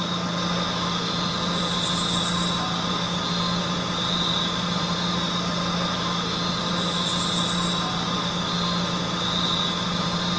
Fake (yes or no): no